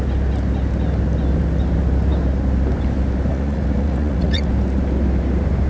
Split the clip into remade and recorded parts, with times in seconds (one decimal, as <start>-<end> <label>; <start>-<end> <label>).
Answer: 0.0-3.3 recorded; 3.3-4.5 remade; 4.5-5.7 recorded